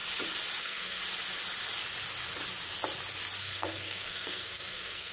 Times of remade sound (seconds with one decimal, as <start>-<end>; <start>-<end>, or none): 0.6-1.0; 3.4-5.1